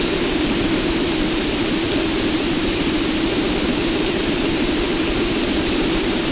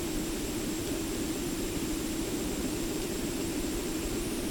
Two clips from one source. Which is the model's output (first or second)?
first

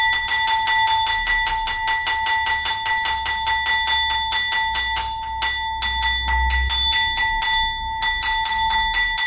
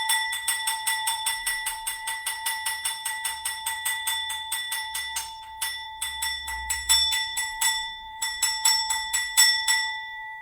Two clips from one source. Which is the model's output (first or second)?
second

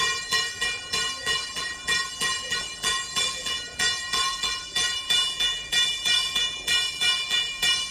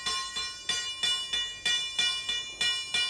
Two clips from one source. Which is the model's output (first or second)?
first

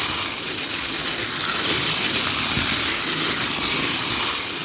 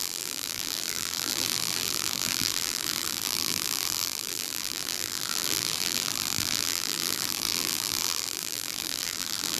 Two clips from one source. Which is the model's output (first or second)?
second